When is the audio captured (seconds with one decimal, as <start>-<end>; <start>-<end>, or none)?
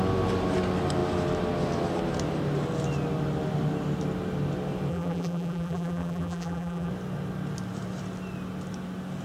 0.0-4.9; 6.9-9.2